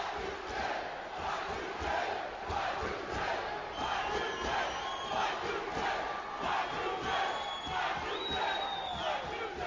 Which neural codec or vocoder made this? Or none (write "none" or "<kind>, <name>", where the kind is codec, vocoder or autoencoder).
none